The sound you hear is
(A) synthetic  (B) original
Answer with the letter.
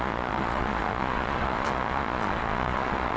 A